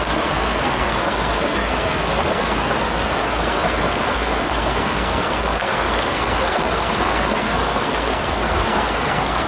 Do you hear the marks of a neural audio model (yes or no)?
yes